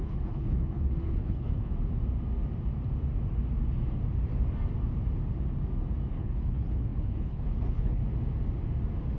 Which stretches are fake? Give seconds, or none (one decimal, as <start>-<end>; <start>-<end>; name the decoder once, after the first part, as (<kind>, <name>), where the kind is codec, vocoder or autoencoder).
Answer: 0.0-1.7 (codec, HILCodec); 6.1-8.0